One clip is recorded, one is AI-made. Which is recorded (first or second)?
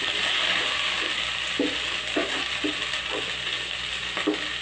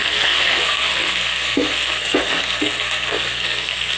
first